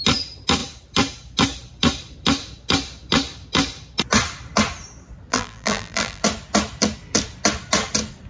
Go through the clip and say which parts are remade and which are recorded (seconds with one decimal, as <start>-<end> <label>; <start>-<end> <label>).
0.0-5.3 recorded; 5.3-6.2 remade; 6.2-8.3 recorded